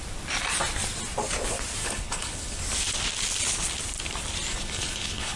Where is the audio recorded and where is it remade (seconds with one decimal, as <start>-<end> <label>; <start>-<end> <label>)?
0.0-1.8 recorded; 1.8-2.6 remade; 2.6-4.5 recorded; 4.5-5.4 remade